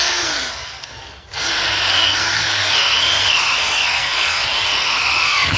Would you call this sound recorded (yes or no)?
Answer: no